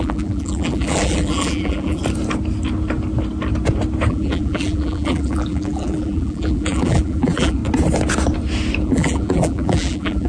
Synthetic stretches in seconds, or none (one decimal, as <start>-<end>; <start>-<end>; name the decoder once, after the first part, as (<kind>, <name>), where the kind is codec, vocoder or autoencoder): 0.0-2.0 (vocoder, BigVGAN v2); 4.1-7.6; 8.8-10.3